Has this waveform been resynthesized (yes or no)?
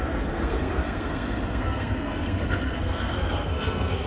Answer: yes